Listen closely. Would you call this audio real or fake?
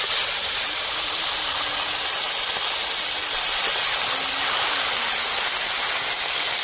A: real